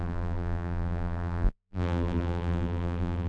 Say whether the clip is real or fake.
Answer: fake